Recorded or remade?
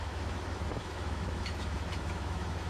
remade